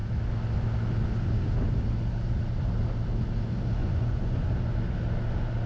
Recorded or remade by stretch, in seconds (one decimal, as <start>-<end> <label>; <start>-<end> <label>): 0.0-3.8 recorded; 3.8-4.5 remade; 4.5-5.7 recorded